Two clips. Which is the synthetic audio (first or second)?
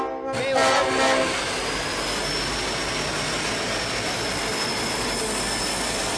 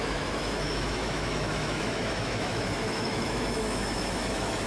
second